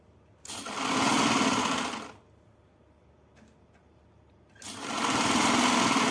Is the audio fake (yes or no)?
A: no